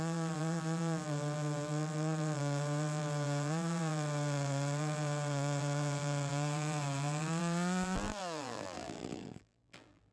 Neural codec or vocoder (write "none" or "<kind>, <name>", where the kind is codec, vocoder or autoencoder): vocoder, BigVGAN v2